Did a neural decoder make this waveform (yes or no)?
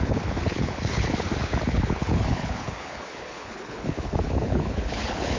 yes